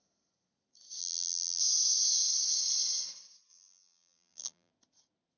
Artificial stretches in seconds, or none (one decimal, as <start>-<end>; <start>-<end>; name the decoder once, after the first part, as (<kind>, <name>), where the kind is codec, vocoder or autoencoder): 1.0-1.6 (vocoder, BigVGAN v2); 3.5-4.7